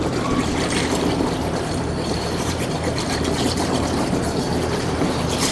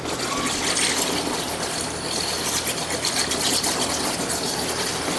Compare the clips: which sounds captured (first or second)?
second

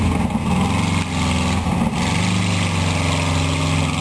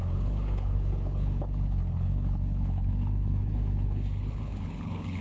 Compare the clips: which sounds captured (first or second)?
first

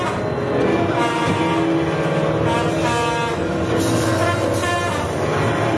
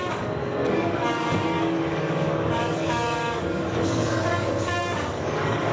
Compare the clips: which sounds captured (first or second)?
first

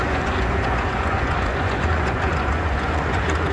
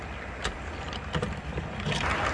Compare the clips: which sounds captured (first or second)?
second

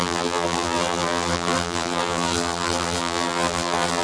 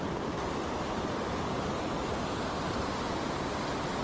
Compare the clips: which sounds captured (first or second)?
second